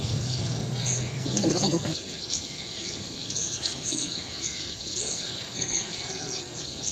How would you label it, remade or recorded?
remade